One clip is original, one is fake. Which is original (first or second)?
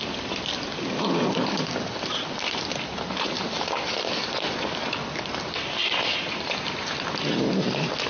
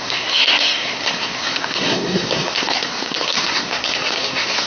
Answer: first